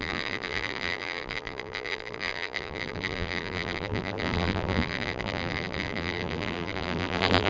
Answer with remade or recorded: remade